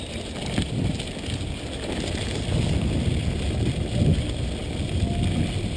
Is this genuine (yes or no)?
yes